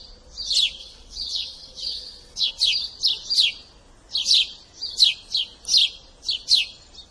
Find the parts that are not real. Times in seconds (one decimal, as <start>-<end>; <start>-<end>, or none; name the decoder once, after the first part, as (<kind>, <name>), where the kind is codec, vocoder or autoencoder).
0.8-2.5 (vocoder, WaveNeXt)